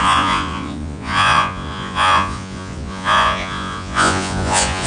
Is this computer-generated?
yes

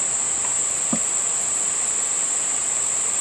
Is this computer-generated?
no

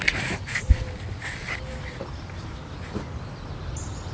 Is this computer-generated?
no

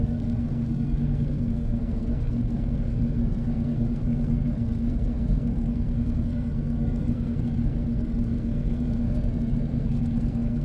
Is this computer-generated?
yes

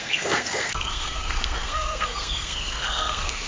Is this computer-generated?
yes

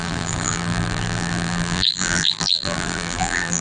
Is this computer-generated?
yes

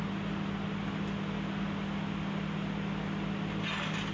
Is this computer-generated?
no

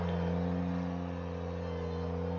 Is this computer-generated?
no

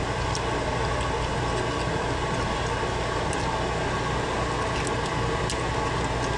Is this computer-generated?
no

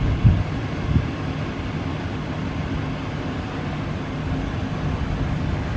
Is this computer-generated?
no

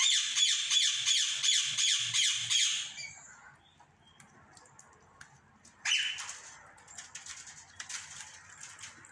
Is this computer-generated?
no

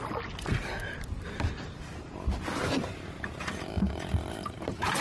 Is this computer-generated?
no